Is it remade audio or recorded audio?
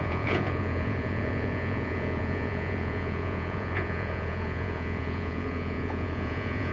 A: remade